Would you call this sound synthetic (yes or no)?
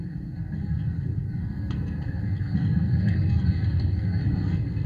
yes